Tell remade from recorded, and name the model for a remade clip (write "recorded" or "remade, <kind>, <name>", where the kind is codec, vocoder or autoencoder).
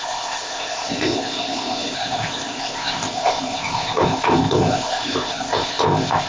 remade, codec, ZipCodec